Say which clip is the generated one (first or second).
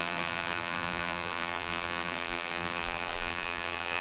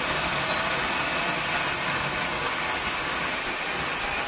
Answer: first